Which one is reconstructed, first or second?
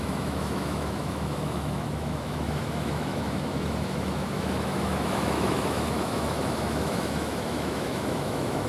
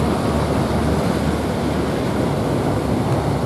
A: first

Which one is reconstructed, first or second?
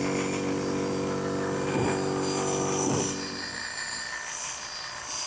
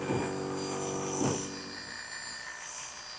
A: first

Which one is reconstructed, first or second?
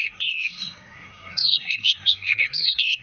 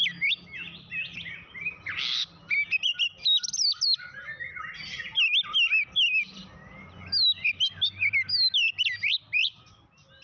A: first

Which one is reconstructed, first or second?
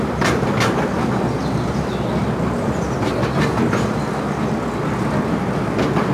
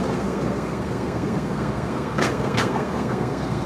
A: second